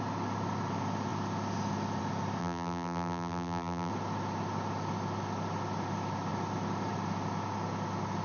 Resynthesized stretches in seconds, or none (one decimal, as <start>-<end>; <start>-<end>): 2.4-3.9